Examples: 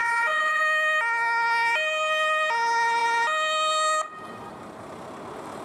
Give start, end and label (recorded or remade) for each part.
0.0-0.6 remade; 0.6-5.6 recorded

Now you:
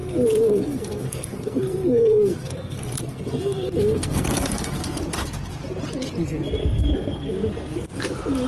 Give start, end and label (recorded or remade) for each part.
0.0-5.0 remade; 5.0-6.6 recorded; 6.6-8.0 remade; 8.0-8.5 recorded